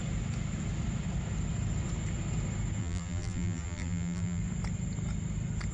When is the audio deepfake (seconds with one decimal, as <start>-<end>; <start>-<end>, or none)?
2.8-4.4